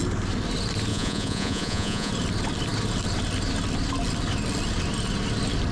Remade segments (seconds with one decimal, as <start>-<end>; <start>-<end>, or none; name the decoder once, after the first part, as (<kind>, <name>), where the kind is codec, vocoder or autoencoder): 0.9-2.1 (vocoder, Vocos)